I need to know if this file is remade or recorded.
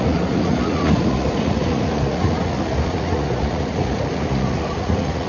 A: remade